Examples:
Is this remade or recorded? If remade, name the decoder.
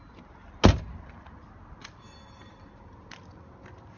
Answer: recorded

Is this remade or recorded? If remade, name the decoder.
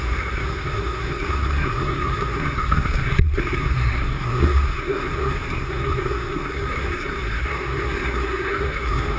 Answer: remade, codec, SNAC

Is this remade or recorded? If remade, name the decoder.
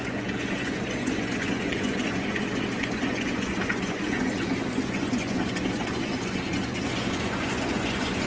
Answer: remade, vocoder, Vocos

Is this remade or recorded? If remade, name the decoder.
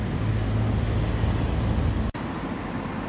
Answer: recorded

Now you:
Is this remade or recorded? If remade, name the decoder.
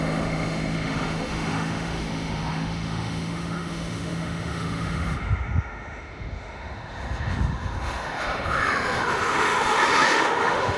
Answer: remade, autoencoder, DAC-VAE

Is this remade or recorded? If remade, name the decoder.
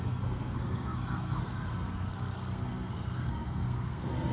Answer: remade, codec, SNAC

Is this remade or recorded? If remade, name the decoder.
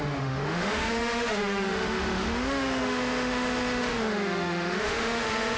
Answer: remade, autoencoder, DAC-VAE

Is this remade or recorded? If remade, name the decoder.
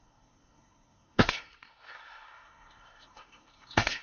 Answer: remade, codec, SNAC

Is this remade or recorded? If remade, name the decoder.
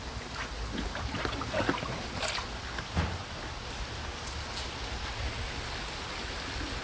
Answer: recorded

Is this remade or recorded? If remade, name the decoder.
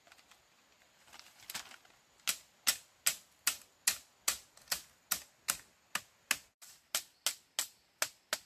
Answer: recorded